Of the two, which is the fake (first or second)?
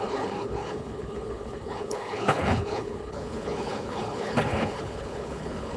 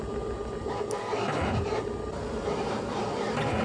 first